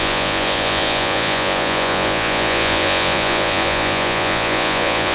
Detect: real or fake fake